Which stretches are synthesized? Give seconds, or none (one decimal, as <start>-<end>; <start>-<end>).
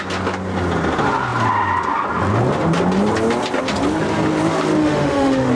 4.8-5.5